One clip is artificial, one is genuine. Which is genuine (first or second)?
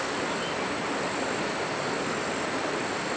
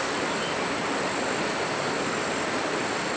first